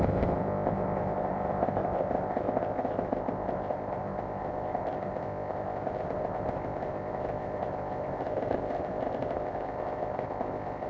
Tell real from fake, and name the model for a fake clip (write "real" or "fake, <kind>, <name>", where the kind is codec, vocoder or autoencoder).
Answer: fake, codec, ZipCodec